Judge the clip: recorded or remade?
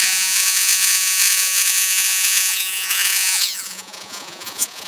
remade